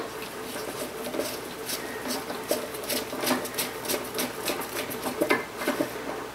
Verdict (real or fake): real